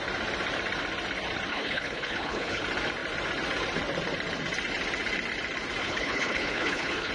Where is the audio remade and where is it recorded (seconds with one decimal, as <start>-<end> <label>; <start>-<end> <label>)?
0.0-1.5 recorded; 1.5-2.6 remade; 2.6-5.8 recorded; 5.8-7.1 remade